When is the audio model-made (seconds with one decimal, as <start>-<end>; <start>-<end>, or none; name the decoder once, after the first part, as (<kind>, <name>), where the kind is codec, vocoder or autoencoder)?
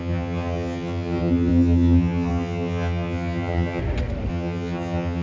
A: 0.0-3.8 (vocoder, HiFi-GAN); 4.3-5.2